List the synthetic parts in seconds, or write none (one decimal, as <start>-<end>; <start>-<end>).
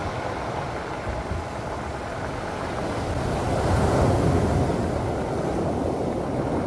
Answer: none